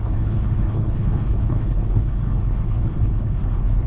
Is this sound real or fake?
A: fake